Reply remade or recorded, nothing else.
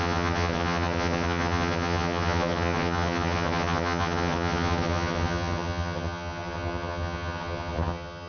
remade